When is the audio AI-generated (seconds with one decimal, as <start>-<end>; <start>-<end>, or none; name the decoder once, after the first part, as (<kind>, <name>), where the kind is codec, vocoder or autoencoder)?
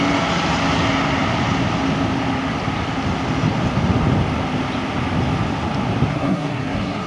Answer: 6.1-7.1 (codec, SNAC)